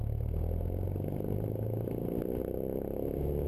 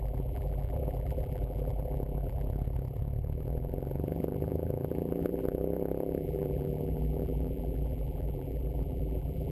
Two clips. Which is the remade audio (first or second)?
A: second